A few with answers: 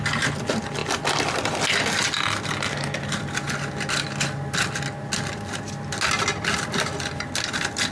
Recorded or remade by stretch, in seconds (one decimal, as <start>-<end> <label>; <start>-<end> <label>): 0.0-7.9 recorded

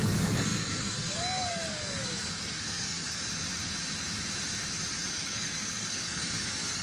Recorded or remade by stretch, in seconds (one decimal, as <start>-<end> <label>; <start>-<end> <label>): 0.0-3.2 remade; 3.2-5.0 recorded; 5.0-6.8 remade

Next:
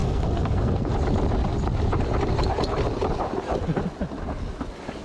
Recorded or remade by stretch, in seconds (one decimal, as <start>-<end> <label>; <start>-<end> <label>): 0.0-0.9 remade; 0.9-5.0 recorded

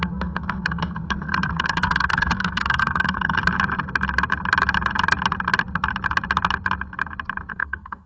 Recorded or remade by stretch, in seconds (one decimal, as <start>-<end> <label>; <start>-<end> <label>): 0.0-3.4 remade; 3.4-7.5 recorded; 7.5-8.1 remade

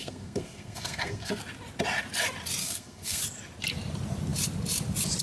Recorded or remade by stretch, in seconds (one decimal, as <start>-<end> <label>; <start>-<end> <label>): 0.0-1.4 remade; 1.4-2.6 recorded; 2.6-3.2 remade; 3.2-5.2 recorded

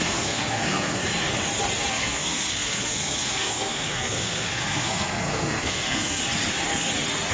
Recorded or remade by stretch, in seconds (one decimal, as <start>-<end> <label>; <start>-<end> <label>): 0.0-1.0 remade; 1.0-1.9 recorded; 1.9-6.2 remade; 6.2-7.3 recorded

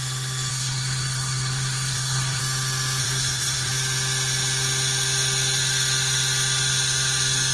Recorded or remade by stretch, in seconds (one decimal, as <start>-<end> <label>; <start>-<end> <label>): 0.0-0.5 recorded; 0.5-2.4 remade; 2.4-3.0 recorded; 3.0-3.7 remade; 3.7-7.5 recorded